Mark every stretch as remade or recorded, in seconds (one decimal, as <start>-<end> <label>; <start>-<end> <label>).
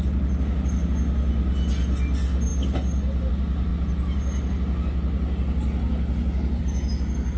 0.0-7.4 recorded